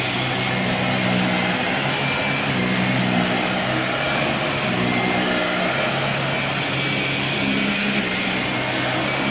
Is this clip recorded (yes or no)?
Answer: yes